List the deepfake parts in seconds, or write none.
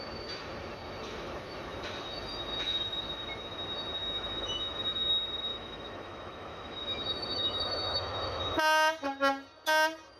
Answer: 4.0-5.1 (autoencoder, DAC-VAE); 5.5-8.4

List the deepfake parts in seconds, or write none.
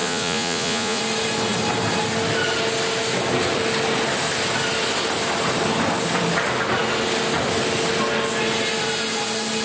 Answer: 0.0-1.0 (vocoder, Vocos)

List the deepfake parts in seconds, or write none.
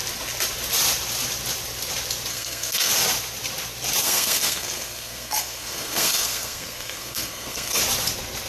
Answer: 2.3-2.9 (codec, SNAC); 4.0-7.8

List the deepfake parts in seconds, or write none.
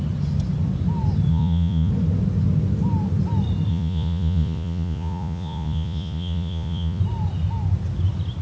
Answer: 1.3-1.9 (vocoder, Vocos); 3.7-7.0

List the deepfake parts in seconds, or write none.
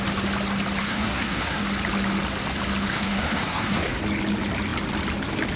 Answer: 0.8-1.6 (codec, SNAC); 2.9-4.0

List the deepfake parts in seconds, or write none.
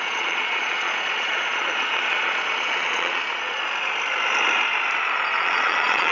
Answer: 0.0-3.6 (vocoder, Vocos); 5.4-6.1